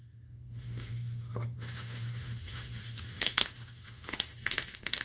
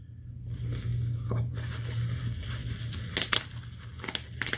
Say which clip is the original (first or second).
second